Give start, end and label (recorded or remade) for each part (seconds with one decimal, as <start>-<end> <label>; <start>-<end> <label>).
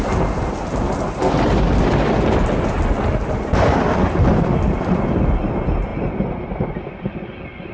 0.0-7.7 recorded